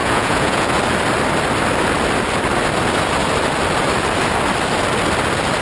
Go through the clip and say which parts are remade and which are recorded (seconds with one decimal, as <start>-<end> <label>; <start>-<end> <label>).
0.0-0.7 remade; 0.7-5.6 recorded